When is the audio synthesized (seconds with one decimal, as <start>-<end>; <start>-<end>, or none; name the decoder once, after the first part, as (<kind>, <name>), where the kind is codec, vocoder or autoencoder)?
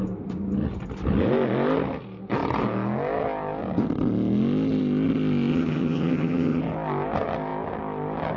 5.5-6.6 (vocoder, HiFi-GAN)